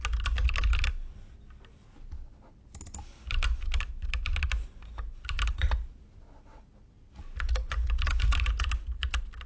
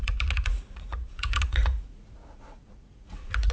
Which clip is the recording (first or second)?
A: first